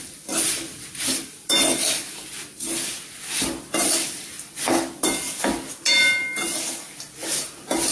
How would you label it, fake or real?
real